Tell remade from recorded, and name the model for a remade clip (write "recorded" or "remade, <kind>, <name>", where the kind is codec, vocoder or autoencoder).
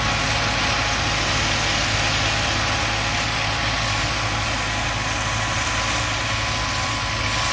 recorded